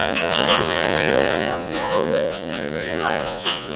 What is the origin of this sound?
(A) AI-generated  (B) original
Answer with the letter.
A